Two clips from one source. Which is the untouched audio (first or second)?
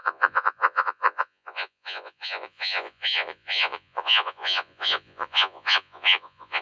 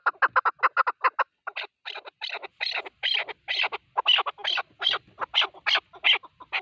second